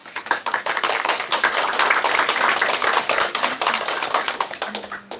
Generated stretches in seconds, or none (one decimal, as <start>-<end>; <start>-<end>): 0.0-1.6; 2.8-4.7